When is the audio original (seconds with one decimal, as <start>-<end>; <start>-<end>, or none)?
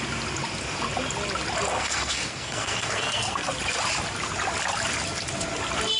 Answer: 0.0-1.7; 3.5-6.0